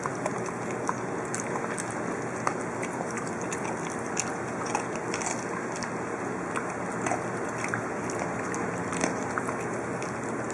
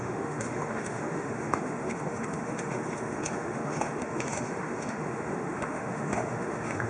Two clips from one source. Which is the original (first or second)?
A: first